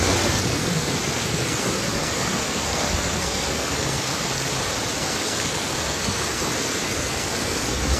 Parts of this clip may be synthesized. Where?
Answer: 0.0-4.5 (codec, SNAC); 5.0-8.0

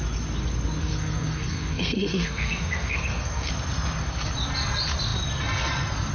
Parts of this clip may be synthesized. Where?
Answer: 0.8-3.5 (codec, SNAC)

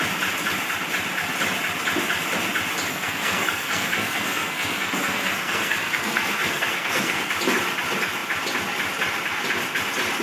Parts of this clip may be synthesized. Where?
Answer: 2.9-7.3 (codec, SNAC)

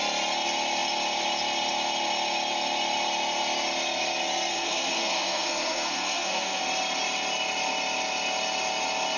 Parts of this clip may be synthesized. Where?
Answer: 4.5-6.6 (codec, SNAC)

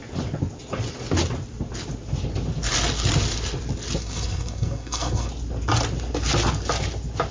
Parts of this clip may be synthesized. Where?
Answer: 4.0-5.3 (codec, SNAC)

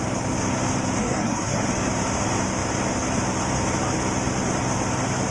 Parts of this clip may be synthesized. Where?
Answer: 1.0-1.7 (codec, SNAC)

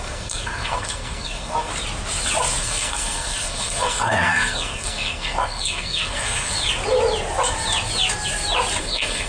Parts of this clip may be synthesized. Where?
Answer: 0.0-1.7 (codec, SNAC); 2.6-6.5; 8.8-9.3